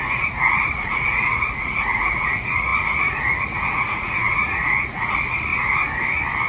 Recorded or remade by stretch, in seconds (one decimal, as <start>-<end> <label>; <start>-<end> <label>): 0.0-5.5 remade; 5.5-6.5 recorded